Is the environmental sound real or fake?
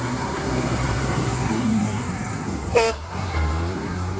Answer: fake